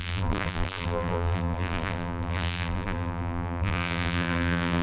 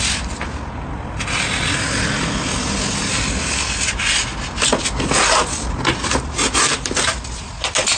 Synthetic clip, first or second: first